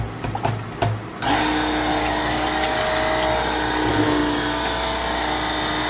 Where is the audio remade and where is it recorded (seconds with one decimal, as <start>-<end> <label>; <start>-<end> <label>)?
0.0-1.9 recorded; 1.9-2.8 remade; 2.8-5.9 recorded